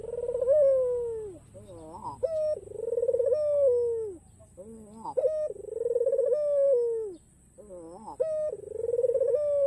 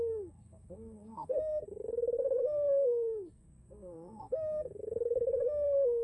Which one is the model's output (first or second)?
second